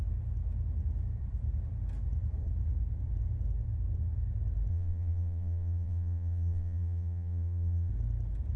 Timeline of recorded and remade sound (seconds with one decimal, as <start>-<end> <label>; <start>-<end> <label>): 0.0-4.7 recorded; 4.7-7.9 remade; 7.9-8.6 recorded